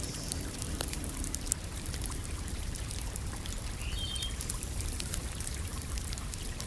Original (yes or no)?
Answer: no